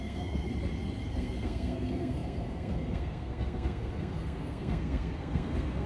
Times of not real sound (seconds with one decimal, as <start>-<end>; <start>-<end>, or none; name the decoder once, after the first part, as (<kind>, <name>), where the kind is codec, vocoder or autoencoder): 0.0-0.5 (codec, SNAC); 1.1-5.9